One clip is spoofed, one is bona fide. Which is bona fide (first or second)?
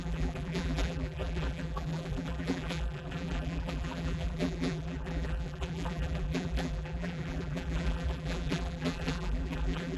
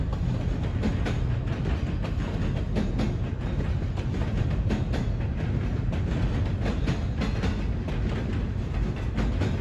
second